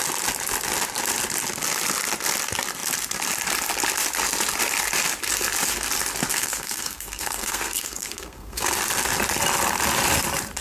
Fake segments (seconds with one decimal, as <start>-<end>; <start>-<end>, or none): 6.3-8.7